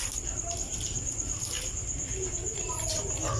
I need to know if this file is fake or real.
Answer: real